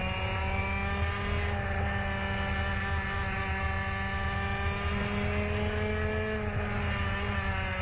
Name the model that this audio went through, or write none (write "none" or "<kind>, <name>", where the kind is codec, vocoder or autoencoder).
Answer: none